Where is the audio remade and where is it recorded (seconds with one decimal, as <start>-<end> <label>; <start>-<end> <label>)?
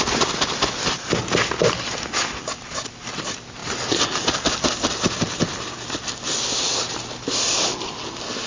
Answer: 0.0-8.5 recorded